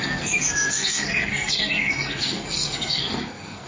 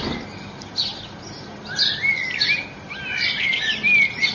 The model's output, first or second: first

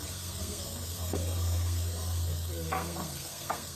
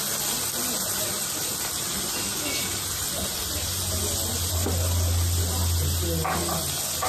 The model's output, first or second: first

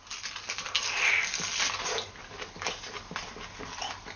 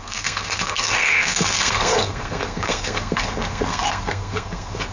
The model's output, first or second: second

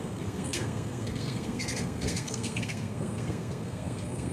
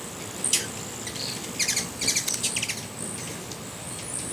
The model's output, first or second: first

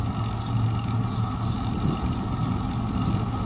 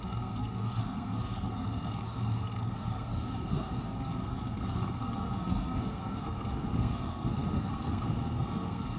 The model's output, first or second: second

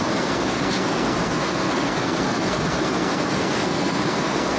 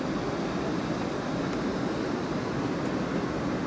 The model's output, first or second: first